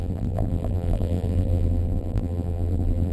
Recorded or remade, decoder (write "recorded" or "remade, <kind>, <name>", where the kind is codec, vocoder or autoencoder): remade, vocoder, BigVGAN v2